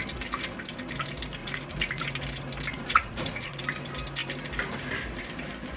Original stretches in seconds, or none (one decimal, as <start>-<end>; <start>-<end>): 0.0-1.4; 2.1-2.7; 3.6-5.8